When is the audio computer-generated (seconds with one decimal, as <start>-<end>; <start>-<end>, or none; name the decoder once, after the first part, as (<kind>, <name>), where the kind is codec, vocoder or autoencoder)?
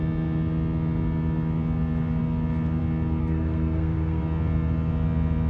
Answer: 3.2-4.2 (codec, SNAC)